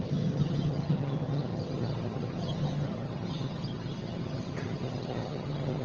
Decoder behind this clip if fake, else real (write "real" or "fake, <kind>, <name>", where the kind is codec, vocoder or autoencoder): fake, vocoder, HiFi-GAN